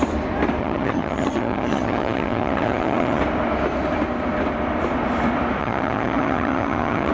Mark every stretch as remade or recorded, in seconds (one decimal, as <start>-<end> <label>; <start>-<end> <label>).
0.0-0.6 recorded; 0.6-3.2 remade; 3.2-5.6 recorded; 5.6-7.1 remade